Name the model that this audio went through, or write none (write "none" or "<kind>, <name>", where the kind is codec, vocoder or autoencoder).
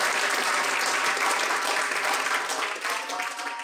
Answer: none